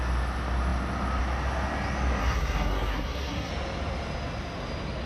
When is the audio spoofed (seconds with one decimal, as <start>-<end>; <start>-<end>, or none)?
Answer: 2.2-3.5